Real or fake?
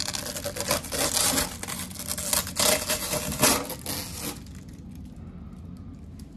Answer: real